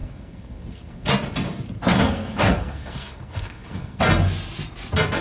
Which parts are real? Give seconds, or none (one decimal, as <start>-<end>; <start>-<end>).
1.1-1.9; 4.0-5.2